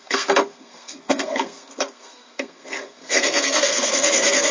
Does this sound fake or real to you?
fake